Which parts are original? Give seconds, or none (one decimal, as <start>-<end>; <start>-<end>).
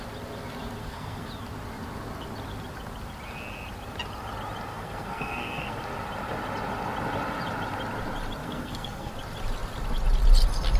0.0-0.8; 1.3-4.7; 5.8-8.4; 9.1-10.8